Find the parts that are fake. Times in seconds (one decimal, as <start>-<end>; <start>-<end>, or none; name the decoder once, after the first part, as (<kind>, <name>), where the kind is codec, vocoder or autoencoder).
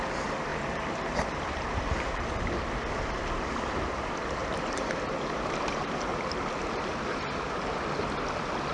0.5-2.7 (vocoder, BigVGAN v2); 4.4-7.6